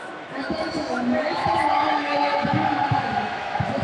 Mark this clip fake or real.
fake